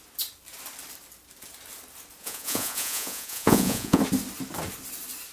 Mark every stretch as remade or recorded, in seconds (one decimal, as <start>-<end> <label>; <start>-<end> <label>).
0.0-2.2 recorded; 2.2-4.0 remade; 4.0-5.3 recorded